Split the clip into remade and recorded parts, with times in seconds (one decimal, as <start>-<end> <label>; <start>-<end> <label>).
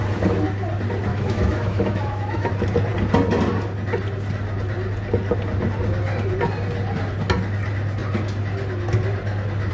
0.0-1.1 recorded; 1.1-2.5 remade; 2.5-9.7 recorded